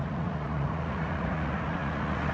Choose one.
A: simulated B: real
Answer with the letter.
A